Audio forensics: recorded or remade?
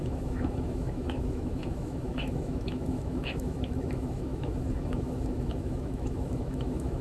remade